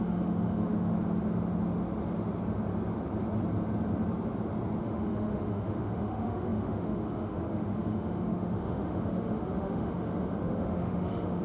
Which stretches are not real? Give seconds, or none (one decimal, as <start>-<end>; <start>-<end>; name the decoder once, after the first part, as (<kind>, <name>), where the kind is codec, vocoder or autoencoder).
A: 0.0-0.9 (autoencoder, DAC-VAE); 4.8-11.4